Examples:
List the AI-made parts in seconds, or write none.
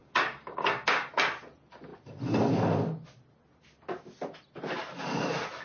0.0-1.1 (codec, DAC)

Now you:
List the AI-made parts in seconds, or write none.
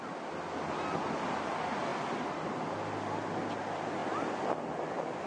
none